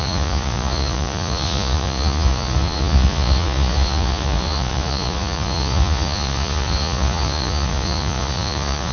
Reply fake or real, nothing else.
fake